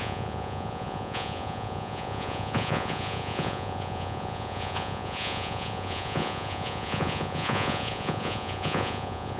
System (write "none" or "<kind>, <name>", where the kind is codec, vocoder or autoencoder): vocoder, Vocos